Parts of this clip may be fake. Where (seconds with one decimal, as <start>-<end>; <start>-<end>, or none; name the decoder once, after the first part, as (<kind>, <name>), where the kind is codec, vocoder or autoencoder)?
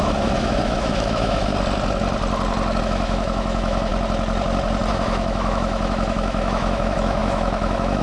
0.0-1.5 (autoencoder, DAC-VAE); 2.8-3.9; 4.9-8.0